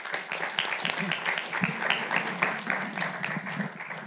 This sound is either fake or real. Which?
real